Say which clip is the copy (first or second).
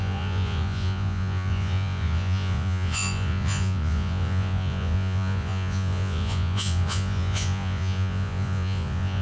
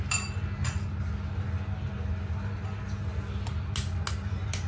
first